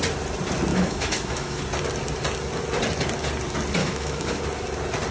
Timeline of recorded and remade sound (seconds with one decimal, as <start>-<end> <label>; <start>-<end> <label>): 0.0-0.7 recorded; 0.7-1.6 remade; 1.6-3.8 recorded; 3.8-4.4 remade; 4.4-5.1 recorded